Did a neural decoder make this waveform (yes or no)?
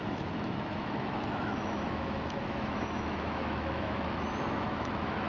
yes